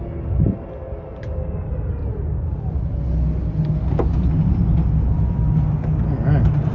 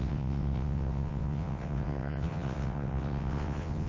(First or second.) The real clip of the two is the first